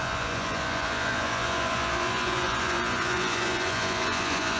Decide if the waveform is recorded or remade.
remade